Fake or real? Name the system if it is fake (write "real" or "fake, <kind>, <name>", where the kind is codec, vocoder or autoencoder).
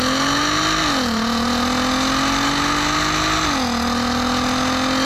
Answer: real